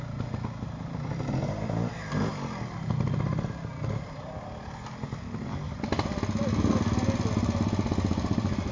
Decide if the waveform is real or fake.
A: real